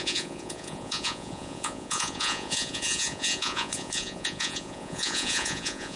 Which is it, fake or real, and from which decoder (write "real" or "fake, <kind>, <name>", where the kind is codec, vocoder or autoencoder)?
fake, vocoder, Vocos